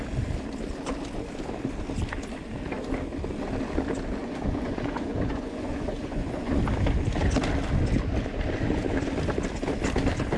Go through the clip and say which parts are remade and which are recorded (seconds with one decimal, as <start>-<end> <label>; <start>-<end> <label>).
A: 0.0-4.2 recorded; 4.2-6.6 remade; 6.6-10.4 recorded